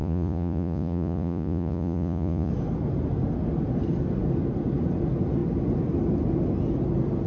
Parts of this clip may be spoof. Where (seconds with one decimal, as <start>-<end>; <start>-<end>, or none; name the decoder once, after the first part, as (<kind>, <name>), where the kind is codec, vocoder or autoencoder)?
0.0-2.5 (vocoder, Vocos)